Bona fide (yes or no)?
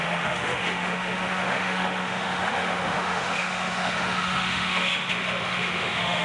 no